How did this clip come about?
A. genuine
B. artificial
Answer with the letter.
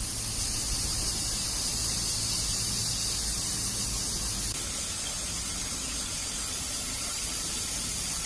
A